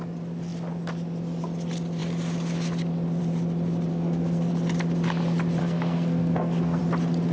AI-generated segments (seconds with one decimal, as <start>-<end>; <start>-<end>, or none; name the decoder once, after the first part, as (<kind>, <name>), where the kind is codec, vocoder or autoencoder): 3.9-4.5 (codec, SNAC); 5.6-6.8